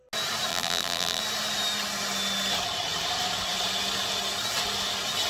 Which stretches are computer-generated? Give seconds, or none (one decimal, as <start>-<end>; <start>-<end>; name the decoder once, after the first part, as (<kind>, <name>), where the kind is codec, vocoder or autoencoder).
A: 0.5-1.2 (vocoder, BigVGAN v2)